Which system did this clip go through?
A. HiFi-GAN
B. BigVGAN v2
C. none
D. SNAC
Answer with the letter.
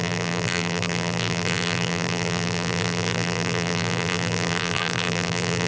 B